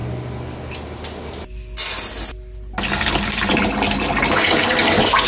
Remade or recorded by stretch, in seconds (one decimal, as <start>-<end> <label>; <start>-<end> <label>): 0.0-5.3 recorded